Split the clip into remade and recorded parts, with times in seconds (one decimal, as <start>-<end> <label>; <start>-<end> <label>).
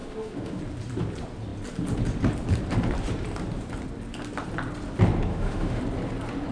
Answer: 0.0-0.6 remade; 0.6-5.3 recorded; 5.3-5.8 remade; 5.8-6.5 recorded